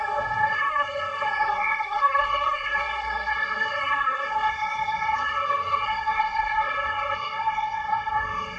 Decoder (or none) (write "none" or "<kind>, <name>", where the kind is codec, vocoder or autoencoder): codec, SNAC